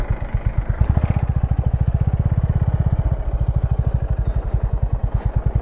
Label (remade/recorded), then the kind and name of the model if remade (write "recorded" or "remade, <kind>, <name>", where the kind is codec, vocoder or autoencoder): recorded